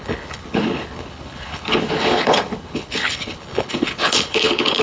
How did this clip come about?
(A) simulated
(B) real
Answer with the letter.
A